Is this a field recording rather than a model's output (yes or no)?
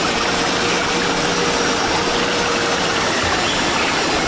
yes